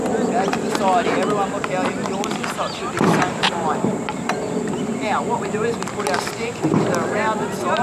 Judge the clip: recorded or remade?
recorded